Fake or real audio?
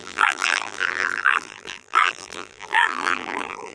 fake